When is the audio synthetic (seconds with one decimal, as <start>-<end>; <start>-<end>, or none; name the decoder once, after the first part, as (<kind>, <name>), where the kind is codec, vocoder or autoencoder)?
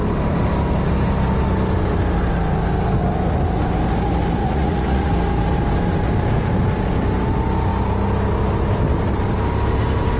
4.4-5.1 (vocoder, Vocos)